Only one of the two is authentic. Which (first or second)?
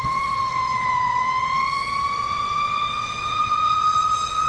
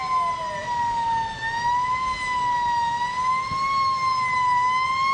second